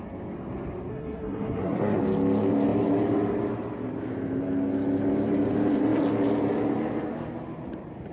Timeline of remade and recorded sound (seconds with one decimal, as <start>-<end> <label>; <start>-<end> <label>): 0.0-0.9 recorded; 0.9-2.0 remade; 2.0-8.1 recorded